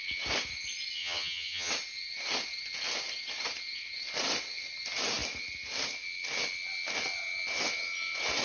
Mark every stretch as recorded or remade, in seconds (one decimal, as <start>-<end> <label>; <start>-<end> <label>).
0.0-1.0 recorded; 1.0-1.7 remade; 1.7-8.4 recorded